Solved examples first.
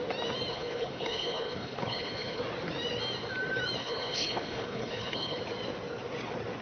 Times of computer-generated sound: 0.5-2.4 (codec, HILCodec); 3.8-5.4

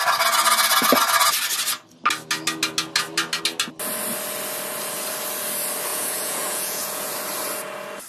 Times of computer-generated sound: 5.9-7.1 (vocoder, Vocos)

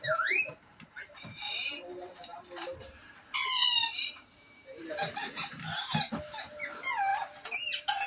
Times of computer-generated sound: 0.0-8.1 (vocoder, BigVGAN v2)

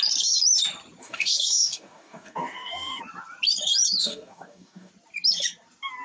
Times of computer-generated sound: 1.0-3.0 (codec, DAC); 4.0-4.9